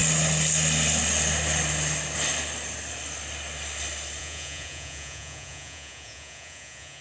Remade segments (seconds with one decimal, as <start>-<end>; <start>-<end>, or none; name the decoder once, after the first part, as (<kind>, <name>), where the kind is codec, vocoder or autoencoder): 4.2-7.0 (vocoder, Vocos)